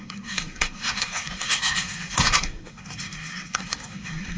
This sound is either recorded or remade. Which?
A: remade